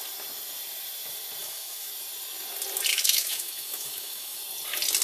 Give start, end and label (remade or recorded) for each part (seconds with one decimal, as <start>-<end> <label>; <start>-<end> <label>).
0.0-1.4 recorded; 1.4-1.9 remade; 1.9-2.9 recorded; 2.9-4.4 remade; 4.4-5.0 recorded